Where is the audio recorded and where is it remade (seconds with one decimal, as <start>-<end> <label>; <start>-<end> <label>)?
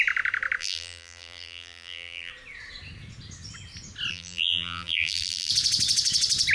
0.0-0.6 recorded; 0.6-2.3 remade; 2.3-4.1 recorded; 4.1-5.5 remade; 5.5-6.5 recorded